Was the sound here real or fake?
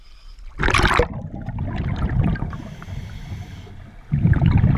fake